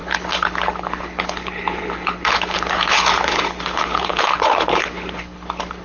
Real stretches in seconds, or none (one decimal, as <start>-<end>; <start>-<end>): none